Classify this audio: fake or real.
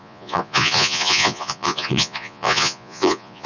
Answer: fake